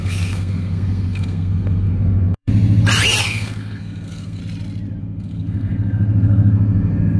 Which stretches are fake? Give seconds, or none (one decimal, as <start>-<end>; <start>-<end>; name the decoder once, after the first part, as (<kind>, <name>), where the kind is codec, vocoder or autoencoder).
0.0-2.5 (codec, SNAC); 3.2-4.4; 5.0-7.2